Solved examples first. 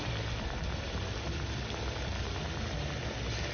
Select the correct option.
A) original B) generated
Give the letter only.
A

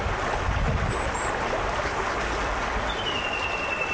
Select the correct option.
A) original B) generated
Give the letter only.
A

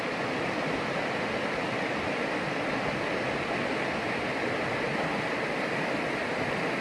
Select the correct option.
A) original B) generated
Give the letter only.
A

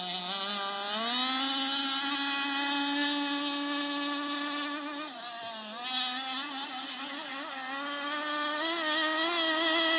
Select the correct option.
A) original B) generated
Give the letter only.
A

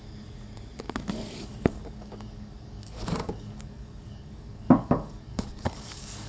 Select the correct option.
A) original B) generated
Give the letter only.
B